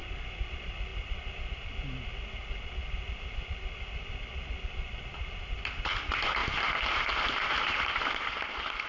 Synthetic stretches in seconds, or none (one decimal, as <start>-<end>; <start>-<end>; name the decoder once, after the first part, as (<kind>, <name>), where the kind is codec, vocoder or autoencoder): 6.4-7.8 (vocoder, BigVGAN v2)